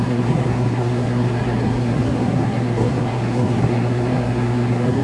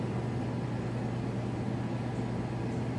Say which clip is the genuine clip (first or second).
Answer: second